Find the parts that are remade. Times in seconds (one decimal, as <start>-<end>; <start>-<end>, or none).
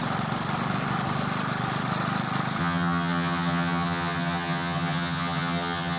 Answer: 2.6-6.0